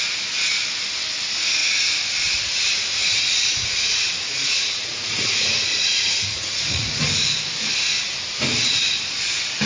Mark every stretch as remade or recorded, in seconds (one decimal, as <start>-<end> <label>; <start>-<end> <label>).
0.0-3.0 recorded; 3.0-7.0 remade; 7.0-9.7 recorded